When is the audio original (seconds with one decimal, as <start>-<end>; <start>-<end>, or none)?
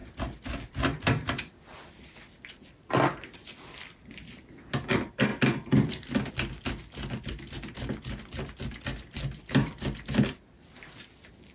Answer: 0.0-11.5